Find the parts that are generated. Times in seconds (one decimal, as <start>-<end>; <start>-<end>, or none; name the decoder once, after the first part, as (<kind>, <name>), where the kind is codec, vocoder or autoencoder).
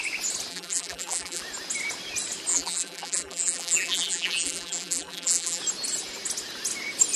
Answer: 0.5-1.4 (vocoder, BigVGAN v2); 2.5-5.6